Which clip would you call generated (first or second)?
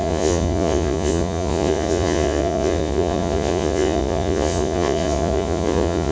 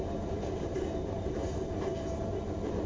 first